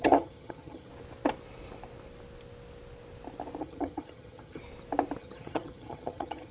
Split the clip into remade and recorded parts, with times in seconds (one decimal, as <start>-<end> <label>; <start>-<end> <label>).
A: 0.0-0.9 remade; 0.9-3.6 recorded; 3.6-4.6 remade; 4.6-5.2 recorded; 5.2-6.5 remade